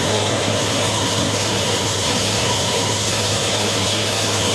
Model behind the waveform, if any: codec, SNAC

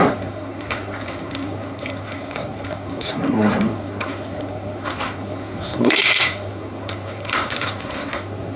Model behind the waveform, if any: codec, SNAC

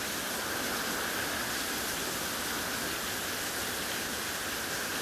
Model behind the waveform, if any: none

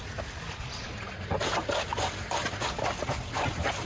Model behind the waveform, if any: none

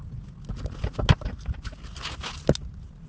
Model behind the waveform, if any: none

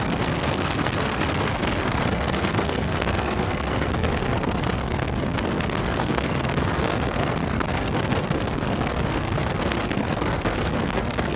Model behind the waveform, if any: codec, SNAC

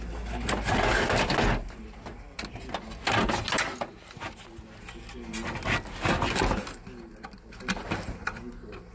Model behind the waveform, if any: none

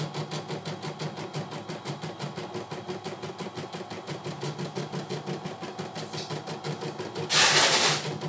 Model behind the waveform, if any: none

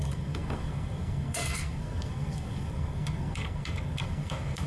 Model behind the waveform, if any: codec, SNAC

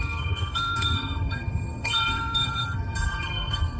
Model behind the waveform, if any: codec, SNAC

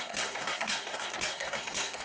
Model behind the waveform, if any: codec, SNAC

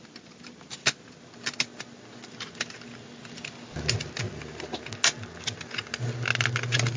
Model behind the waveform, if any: none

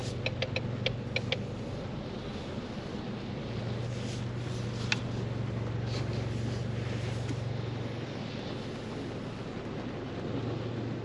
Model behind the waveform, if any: none